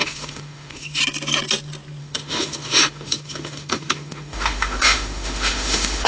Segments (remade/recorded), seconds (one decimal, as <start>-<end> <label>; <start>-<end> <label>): 0.0-1.0 remade; 1.0-2.0 recorded; 2.0-6.1 remade